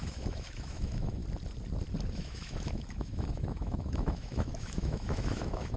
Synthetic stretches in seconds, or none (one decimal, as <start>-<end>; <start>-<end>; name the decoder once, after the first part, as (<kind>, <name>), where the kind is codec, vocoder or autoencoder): 0.0-1.2 (autoencoder, DAC-VAE); 2.1-5.8